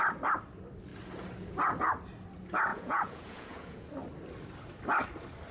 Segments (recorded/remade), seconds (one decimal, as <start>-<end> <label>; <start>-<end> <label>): 0.0-2.7 recorded; 2.7-3.9 remade; 3.9-5.5 recorded